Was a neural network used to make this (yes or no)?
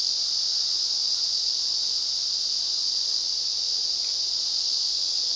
no